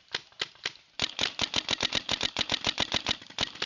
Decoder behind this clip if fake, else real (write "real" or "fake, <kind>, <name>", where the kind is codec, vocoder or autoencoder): real